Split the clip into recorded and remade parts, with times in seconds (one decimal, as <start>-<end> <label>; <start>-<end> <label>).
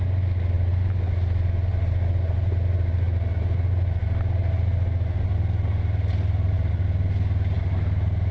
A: 0.0-8.3 recorded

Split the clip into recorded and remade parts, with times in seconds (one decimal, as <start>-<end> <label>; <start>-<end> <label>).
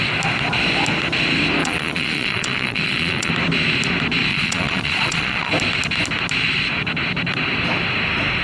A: 0.0-1.6 recorded; 1.6-3.3 remade; 3.3-4.3 recorded; 4.3-5.5 remade; 5.5-8.4 recorded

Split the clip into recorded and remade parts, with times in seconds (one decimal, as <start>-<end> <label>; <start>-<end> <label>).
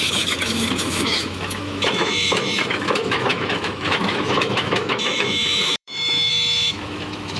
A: 0.0-7.4 remade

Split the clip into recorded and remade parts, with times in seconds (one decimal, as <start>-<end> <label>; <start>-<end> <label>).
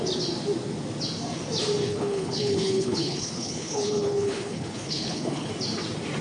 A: 0.0-1.8 recorded; 1.8-5.5 remade; 5.5-6.2 recorded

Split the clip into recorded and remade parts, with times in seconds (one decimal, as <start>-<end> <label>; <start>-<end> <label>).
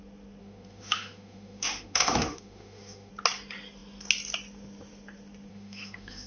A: 0.0-0.4 recorded; 0.4-3.1 remade; 3.1-5.5 recorded; 5.5-6.3 remade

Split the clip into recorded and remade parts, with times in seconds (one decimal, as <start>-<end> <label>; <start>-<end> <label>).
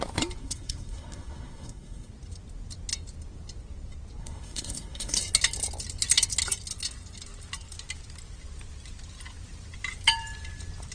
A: 0.0-0.4 recorded; 0.4-2.1 remade; 2.1-4.2 recorded; 4.2-5.2 remade; 5.2-10.9 recorded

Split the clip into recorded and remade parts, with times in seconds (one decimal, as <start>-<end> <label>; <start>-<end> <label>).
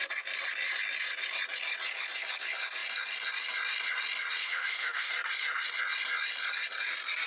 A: 0.0-4.4 recorded; 4.4-5.1 remade; 5.1-7.3 recorded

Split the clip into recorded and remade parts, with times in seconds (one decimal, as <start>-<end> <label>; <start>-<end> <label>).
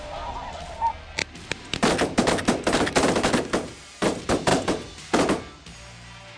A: 0.0-6.4 recorded